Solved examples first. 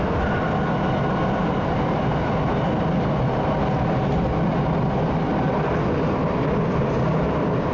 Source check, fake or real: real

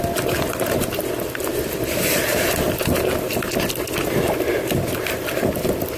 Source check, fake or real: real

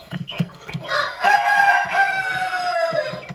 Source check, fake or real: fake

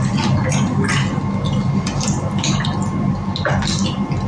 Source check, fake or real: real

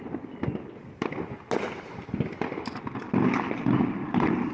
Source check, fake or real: real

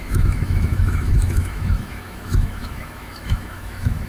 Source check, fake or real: fake